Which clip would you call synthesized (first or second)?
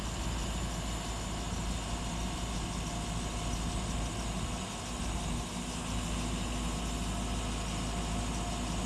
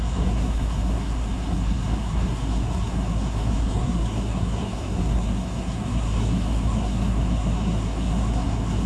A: second